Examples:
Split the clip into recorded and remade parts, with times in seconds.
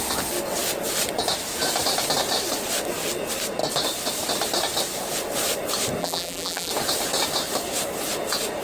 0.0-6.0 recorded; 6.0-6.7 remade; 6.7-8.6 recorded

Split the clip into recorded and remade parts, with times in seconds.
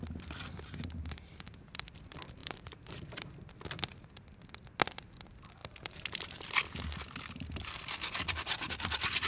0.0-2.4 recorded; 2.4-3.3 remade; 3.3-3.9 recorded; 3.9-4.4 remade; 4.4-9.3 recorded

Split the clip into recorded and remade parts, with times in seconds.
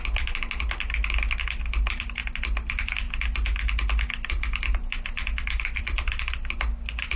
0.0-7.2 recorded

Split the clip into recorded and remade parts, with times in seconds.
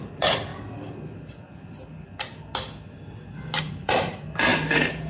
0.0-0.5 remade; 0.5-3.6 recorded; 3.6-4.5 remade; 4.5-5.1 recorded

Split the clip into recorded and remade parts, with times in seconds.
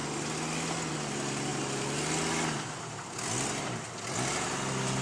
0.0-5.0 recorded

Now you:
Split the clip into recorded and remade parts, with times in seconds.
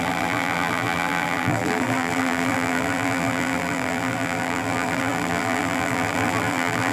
0.0-6.9 remade